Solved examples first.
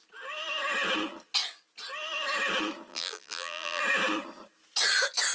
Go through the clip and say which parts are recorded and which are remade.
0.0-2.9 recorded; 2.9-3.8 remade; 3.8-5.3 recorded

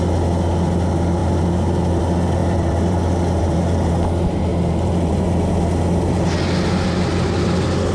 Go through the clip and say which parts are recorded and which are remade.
0.0-2.4 recorded; 2.4-3.9 remade; 3.9-4.5 recorded; 4.5-5.6 remade; 5.6-7.9 recorded